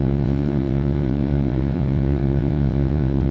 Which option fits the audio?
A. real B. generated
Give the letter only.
B